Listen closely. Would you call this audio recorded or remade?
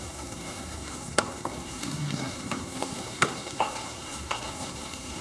remade